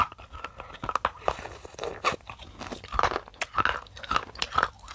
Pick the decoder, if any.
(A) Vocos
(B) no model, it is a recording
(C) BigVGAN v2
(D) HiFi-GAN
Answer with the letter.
B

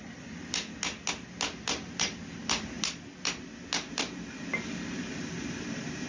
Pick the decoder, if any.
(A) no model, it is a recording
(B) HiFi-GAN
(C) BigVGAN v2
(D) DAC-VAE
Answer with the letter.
A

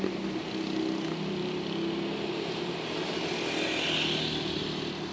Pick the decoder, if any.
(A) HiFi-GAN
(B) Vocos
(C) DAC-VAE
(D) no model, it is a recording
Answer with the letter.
D